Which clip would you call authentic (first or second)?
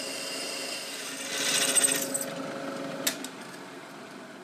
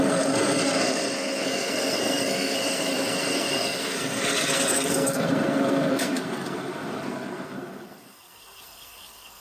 first